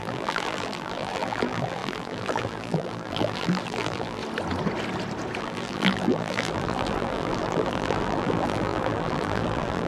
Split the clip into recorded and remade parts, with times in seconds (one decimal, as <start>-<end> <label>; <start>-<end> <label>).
0.0-4.2 remade; 4.2-5.4 recorded; 5.4-9.9 remade